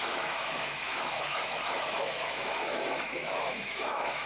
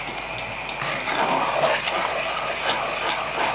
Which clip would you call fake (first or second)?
first